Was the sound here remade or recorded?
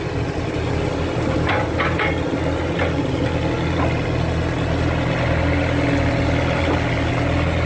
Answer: recorded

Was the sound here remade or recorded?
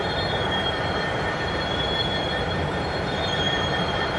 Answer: remade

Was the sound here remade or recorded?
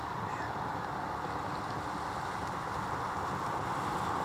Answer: recorded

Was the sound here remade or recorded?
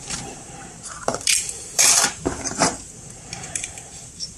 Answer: remade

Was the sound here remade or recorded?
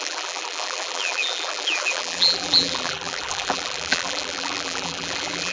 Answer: remade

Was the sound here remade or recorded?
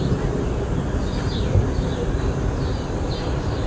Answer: recorded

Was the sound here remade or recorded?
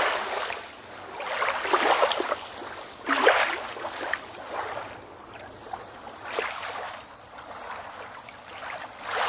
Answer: recorded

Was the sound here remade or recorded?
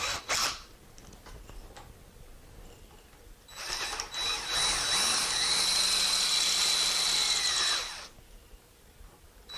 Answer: recorded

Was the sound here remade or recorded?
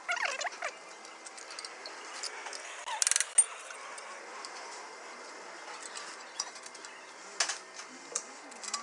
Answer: recorded